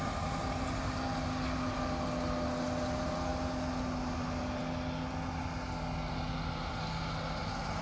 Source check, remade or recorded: recorded